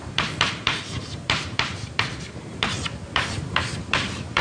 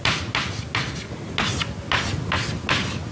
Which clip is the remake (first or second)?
first